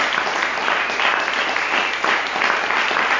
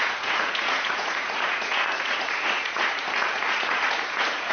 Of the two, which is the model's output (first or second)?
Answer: second